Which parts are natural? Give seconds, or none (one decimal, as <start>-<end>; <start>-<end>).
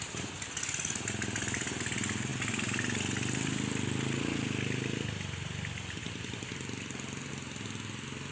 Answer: 0.0-8.3